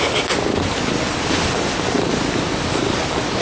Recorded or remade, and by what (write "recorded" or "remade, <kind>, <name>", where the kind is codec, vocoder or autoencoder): recorded